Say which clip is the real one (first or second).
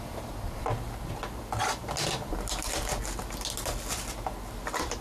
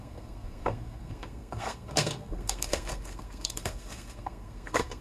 first